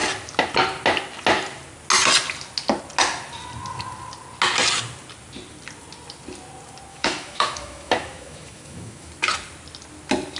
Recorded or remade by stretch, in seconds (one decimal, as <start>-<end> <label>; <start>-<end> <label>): 0.0-6.9 recorded; 6.9-9.1 remade; 9.1-10.4 recorded